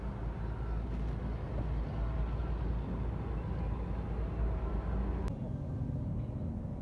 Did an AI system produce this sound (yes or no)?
no